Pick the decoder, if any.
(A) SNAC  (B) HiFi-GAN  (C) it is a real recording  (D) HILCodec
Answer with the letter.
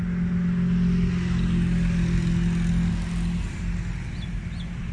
C